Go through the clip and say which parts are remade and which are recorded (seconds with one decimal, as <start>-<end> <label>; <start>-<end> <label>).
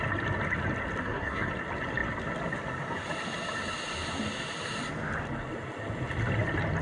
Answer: 0.0-1.0 recorded; 1.0-1.5 remade; 1.5-6.8 recorded